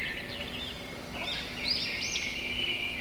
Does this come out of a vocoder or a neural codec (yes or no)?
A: no